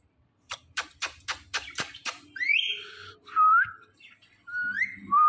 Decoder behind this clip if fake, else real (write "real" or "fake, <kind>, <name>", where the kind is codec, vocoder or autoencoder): fake, vocoder, BigVGAN v2